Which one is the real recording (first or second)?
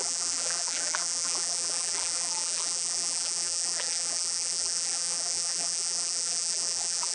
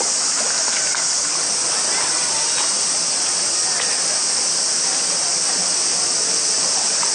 second